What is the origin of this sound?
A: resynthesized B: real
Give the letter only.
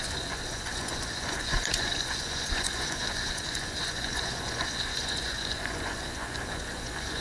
A